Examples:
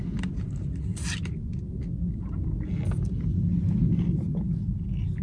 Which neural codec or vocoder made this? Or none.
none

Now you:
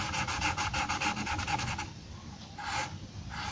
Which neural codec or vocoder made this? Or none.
none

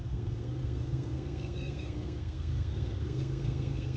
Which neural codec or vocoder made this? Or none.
codec, SNAC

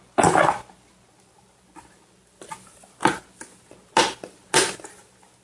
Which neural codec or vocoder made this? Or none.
none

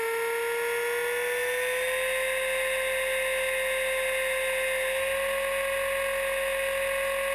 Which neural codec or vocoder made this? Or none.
none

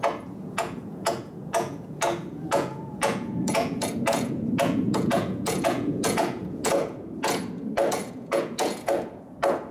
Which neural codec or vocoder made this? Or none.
vocoder, Vocos